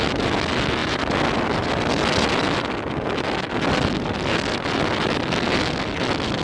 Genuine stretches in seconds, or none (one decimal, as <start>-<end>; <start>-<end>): 0.0-6.4